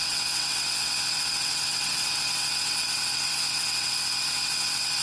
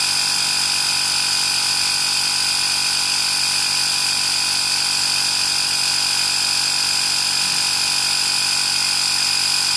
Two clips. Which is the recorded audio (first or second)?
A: second